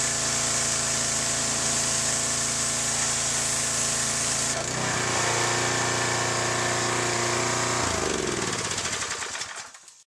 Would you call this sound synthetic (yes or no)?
no